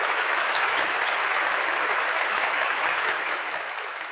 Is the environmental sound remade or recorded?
remade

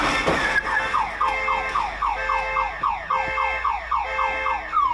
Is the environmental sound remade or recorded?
recorded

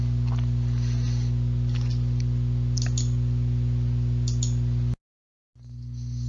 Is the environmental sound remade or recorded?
recorded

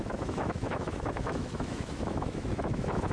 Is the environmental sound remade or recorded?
remade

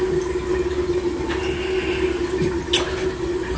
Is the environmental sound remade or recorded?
recorded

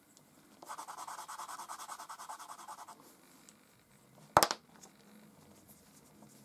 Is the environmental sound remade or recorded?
recorded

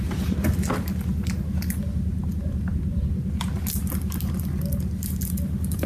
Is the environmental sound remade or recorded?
recorded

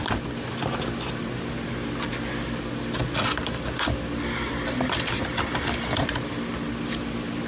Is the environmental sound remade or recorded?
recorded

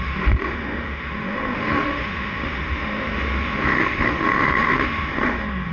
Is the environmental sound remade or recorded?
remade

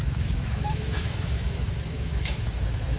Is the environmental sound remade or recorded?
remade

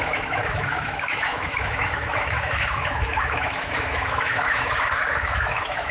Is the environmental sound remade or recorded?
remade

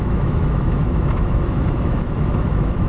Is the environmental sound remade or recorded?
remade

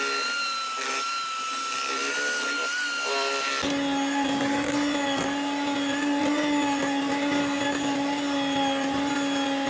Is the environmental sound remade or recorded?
recorded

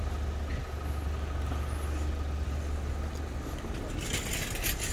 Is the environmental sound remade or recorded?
recorded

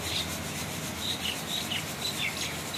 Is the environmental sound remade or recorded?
recorded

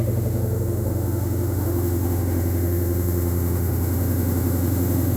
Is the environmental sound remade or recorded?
remade